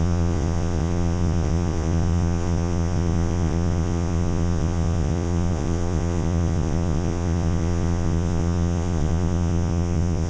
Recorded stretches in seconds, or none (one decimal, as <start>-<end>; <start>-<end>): none